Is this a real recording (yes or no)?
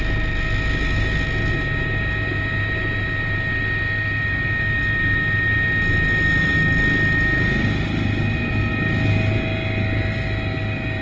yes